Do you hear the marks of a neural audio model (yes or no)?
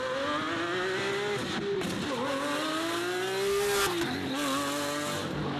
no